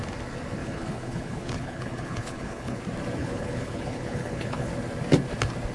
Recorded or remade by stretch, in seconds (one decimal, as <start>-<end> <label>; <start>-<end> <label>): 0.0-0.6 recorded; 0.6-2.8 remade; 2.8-3.2 recorded; 3.2-4.7 remade; 4.7-5.7 recorded